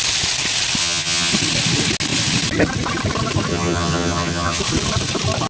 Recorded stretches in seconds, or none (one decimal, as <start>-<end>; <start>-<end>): 0.0-0.8; 1.3-3.5; 4.6-5.5